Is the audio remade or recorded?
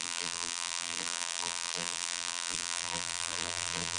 remade